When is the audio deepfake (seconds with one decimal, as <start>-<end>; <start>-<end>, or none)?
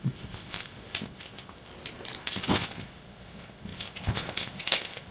0.0-1.7; 2.2-5.1